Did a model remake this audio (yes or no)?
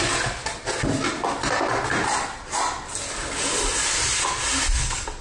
no